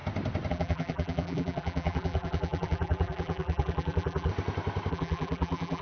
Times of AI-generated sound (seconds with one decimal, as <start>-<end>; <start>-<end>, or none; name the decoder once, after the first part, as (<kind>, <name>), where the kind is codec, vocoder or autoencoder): 0.5-4.3 (vocoder, BigVGAN v2); 4.9-5.8